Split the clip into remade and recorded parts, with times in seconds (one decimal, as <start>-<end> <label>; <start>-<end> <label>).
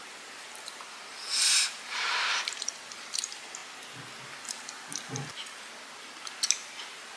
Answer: 0.0-3.6 remade; 3.6-4.9 recorded; 4.9-5.7 remade; 5.7-6.8 recorded; 6.8-7.2 remade